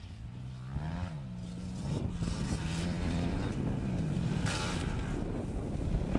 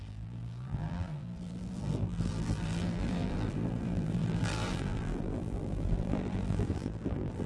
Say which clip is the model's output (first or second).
second